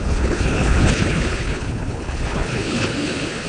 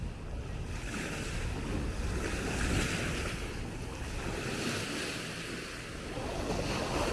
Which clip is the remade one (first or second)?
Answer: first